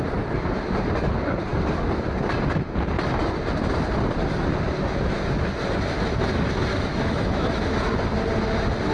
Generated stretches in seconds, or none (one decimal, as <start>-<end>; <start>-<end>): 6.7-7.6